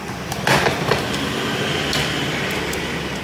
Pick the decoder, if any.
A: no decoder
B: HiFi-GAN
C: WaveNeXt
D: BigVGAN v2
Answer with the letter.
A